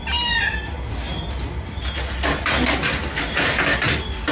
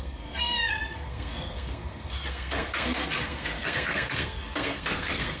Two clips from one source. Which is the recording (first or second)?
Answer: first